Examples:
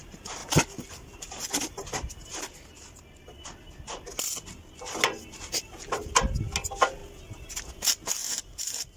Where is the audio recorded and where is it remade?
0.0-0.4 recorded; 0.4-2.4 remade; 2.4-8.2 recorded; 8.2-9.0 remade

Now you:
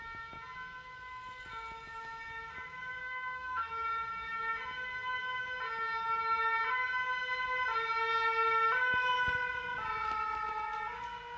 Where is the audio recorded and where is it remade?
0.0-3.0 recorded; 3.0-3.7 remade; 3.7-11.4 recorded

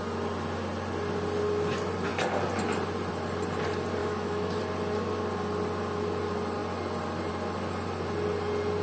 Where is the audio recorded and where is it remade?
0.0-4.0 recorded; 4.0-4.6 remade; 4.6-8.8 recorded

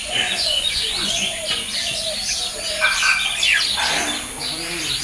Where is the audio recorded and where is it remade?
0.0-1.8 remade; 1.8-5.0 recorded

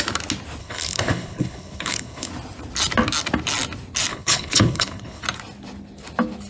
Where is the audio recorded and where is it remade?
0.0-0.6 recorded; 0.6-2.3 remade; 2.3-4.1 recorded; 4.1-5.2 remade; 5.2-6.5 recorded

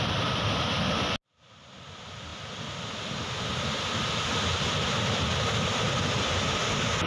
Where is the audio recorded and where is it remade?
0.0-7.1 recorded

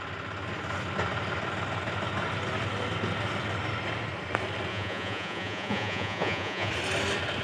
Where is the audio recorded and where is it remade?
0.0-4.7 recorded; 4.7-6.7 remade; 6.7-7.4 recorded